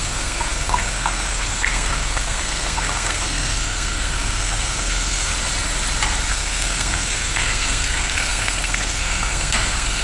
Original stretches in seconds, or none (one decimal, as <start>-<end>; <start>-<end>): 5.3-6.3